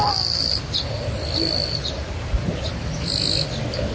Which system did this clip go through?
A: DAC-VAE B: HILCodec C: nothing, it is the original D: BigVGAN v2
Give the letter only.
C